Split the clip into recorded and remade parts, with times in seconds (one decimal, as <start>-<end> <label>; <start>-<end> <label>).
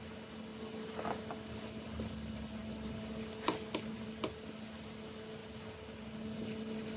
0.0-7.0 recorded